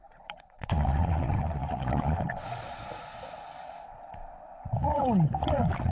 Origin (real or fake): fake